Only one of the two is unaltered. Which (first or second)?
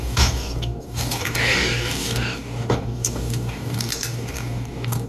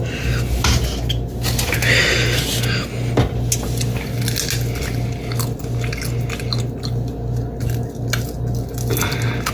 second